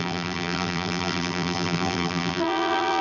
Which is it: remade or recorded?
remade